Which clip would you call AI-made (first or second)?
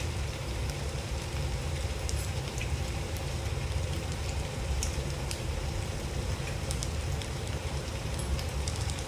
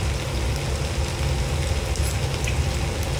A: first